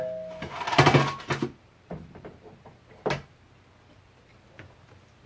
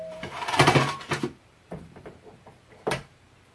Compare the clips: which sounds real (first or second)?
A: first